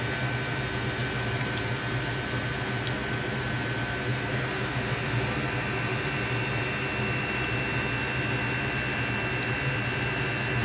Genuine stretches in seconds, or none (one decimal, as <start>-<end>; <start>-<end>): 0.0-1.0; 1.6-10.6